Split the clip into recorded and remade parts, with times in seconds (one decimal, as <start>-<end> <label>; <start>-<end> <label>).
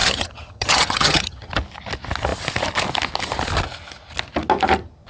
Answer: 0.0-1.5 remade; 1.5-5.1 recorded